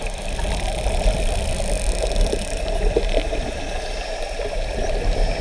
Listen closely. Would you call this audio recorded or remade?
recorded